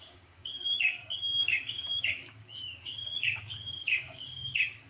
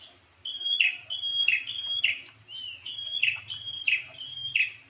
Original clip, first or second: second